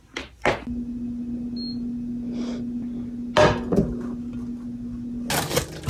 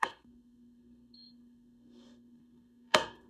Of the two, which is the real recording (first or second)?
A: first